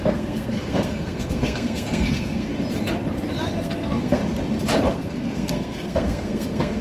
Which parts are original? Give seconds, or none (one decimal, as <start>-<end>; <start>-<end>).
2.5-3.6; 4.2-4.9